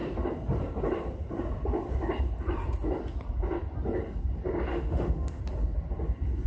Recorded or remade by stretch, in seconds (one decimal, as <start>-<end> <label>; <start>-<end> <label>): 0.0-4.7 recorded; 4.7-5.4 remade; 5.4-6.5 recorded